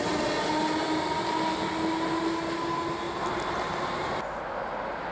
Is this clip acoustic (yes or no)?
yes